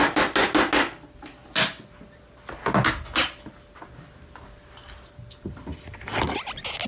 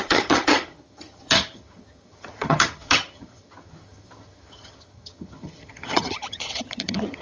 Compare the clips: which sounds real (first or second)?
first